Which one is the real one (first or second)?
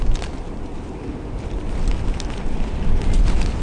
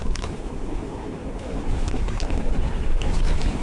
first